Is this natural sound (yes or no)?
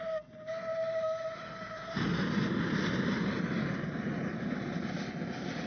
yes